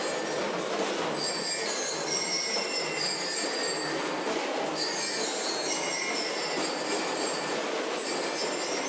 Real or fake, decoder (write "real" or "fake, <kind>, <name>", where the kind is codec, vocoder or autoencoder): real